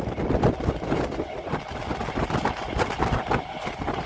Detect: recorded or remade recorded